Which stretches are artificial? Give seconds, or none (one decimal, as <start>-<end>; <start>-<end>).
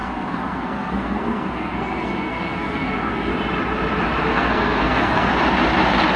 0.0-3.3; 4.3-5.3